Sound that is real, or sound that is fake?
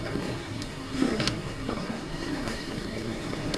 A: fake